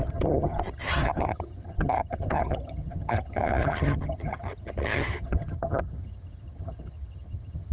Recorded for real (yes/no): no